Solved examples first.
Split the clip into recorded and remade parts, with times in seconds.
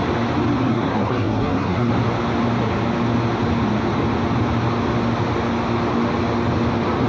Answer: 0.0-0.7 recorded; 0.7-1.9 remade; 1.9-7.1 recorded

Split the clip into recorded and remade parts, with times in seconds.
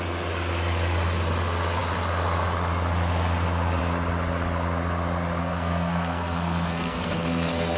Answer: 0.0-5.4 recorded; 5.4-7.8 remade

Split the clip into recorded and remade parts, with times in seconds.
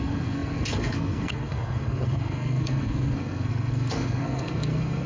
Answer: 0.0-5.1 remade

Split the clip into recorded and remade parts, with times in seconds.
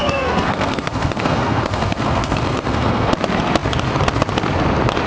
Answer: 0.0-3.1 remade; 3.1-5.1 recorded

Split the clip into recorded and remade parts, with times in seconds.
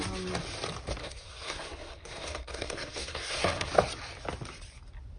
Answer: 0.0-1.0 recorded; 1.0-3.7 remade; 3.7-5.2 recorded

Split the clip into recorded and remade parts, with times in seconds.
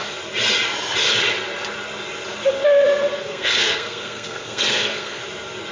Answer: 0.0-3.2 recorded; 3.2-5.2 remade; 5.2-5.7 recorded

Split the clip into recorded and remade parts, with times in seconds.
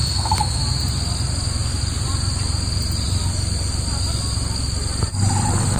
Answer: 0.0-0.6 remade; 0.6-5.8 recorded